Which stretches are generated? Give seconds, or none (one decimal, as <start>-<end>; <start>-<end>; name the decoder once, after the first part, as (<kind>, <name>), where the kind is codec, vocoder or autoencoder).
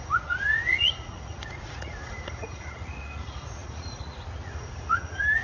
0.0-5.4 (vocoder, Vocos)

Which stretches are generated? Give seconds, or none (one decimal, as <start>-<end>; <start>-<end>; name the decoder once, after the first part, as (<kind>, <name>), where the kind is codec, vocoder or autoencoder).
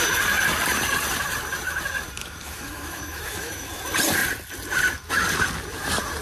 2.2-3.7 (autoencoder, DAC-VAE)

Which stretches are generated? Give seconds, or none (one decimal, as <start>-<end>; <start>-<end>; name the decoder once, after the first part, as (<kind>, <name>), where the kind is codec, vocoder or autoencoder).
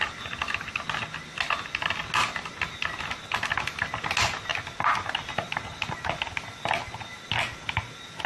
none